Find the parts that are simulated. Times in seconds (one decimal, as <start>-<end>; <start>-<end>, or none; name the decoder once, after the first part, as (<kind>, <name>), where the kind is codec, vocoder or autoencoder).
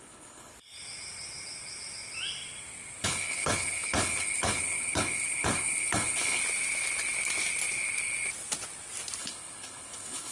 0.0-0.5 (codec, HILCodec); 3.0-6.4; 9.2-10.3